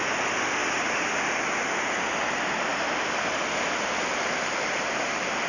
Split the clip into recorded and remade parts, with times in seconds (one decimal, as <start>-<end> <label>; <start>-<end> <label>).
0.0-0.6 recorded; 0.6-1.2 remade; 1.2-5.5 recorded